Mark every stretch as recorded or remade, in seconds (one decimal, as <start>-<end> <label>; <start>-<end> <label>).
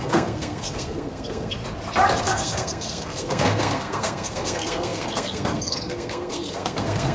0.0-1.6 remade; 1.6-2.2 recorded; 2.2-7.1 remade